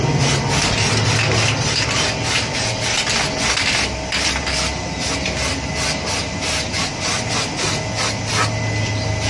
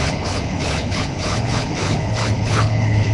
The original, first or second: first